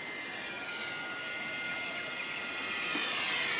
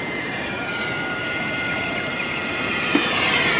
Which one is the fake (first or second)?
second